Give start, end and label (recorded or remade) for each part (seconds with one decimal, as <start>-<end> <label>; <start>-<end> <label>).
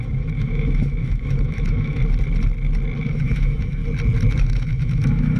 0.0-2.0 remade; 2.0-3.0 recorded; 3.0-3.8 remade; 3.8-4.4 recorded; 4.4-5.4 remade